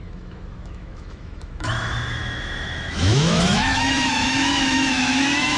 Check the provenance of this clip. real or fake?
fake